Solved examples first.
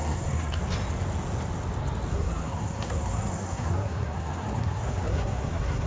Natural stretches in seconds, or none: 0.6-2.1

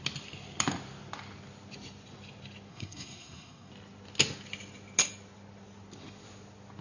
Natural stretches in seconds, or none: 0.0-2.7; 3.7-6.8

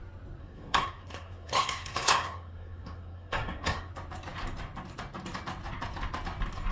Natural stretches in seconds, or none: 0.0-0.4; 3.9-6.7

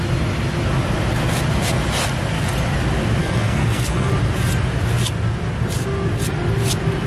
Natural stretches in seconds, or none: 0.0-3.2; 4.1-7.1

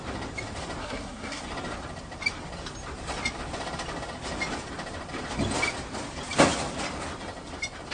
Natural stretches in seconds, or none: 0.0-0.8; 1.4-7.9

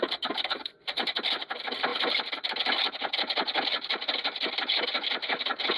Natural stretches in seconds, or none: 0.0-5.8